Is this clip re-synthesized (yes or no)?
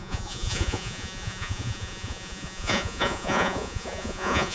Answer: yes